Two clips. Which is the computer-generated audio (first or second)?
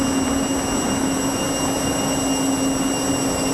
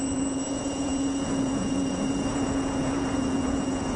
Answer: second